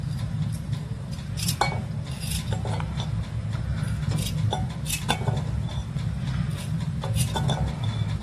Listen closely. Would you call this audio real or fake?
real